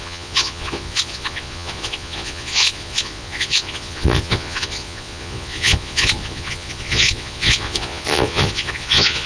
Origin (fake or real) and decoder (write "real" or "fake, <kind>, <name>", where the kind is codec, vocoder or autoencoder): fake, vocoder, Vocos